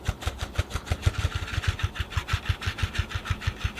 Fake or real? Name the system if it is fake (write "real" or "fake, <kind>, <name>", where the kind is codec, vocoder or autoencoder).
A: real